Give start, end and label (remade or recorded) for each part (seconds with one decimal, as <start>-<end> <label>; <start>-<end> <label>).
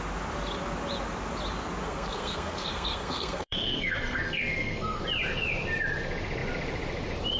0.0-1.8 recorded; 1.8-5.0 remade; 5.0-7.4 recorded